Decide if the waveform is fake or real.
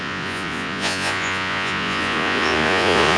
fake